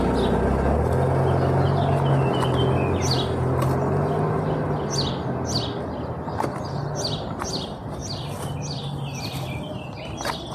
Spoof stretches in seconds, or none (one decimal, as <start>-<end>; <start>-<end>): none